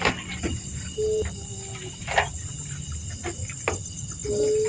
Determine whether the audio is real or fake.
real